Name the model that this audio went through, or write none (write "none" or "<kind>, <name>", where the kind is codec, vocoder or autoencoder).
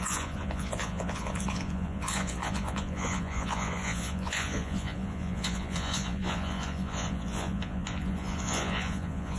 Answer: vocoder, Vocos